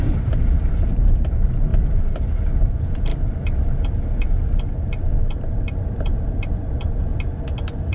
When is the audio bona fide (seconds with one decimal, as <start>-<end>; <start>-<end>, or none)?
1.7-2.5; 7.1-7.9